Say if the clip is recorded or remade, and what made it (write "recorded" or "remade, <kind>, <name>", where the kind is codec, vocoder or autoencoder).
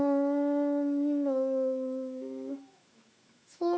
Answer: remade, autoencoder, DAC-VAE